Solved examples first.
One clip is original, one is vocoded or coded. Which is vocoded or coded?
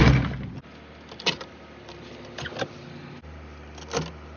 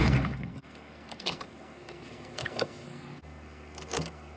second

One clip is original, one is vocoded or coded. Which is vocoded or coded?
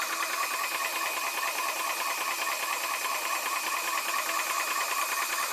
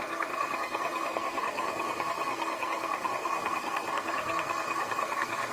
second